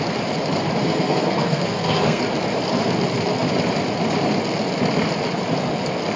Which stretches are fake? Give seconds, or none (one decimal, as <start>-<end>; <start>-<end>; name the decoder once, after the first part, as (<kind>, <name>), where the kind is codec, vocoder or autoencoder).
0.8-2.2 (codec, SNAC)